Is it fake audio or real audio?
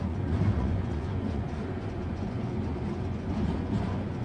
fake